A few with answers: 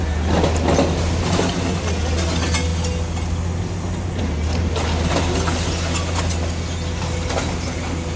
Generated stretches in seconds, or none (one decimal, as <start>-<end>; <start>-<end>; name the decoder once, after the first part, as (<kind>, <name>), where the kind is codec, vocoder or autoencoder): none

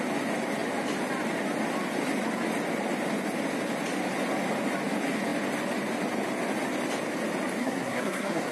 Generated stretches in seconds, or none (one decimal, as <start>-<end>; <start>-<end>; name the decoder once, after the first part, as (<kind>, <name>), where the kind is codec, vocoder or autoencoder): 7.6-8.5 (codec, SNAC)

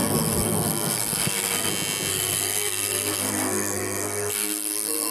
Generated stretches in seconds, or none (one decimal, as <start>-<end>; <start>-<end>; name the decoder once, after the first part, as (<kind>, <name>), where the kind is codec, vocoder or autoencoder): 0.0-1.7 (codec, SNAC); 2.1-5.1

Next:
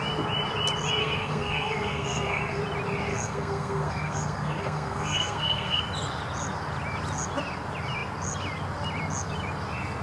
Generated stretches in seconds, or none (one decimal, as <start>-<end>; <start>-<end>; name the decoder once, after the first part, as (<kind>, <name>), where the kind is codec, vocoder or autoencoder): 1.0-2.6 (codec, SNAC); 3.1-5.8

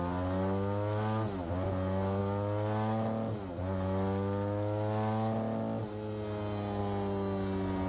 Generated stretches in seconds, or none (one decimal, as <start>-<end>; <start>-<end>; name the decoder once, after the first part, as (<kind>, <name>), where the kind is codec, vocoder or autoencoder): none

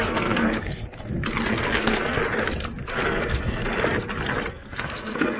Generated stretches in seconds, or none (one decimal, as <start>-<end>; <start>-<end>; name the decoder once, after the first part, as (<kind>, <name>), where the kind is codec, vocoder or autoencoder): 0.0-0.7 (codec, SNAC); 1.5-2.2; 2.9-3.6; 4.5-5.4